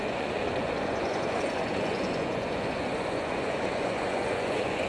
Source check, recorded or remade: remade